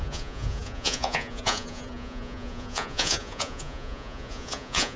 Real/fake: fake